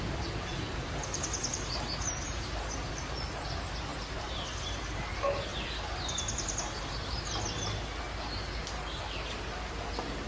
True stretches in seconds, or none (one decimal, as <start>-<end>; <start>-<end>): 0.0-0.5; 3.2-3.9; 5.0-5.5; 7.4-10.3